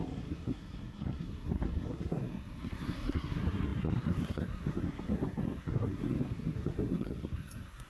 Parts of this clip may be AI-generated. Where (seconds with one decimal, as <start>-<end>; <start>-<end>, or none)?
0.0-7.9